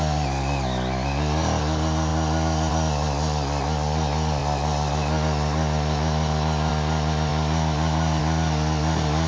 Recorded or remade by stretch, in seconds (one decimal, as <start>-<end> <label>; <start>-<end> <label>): 0.0-9.3 recorded